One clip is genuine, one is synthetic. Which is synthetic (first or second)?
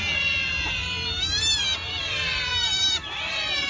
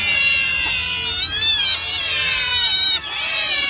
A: first